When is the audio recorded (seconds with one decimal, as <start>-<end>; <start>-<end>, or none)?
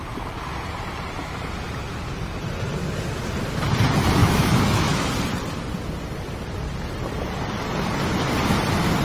0.0-4.2; 5.1-9.0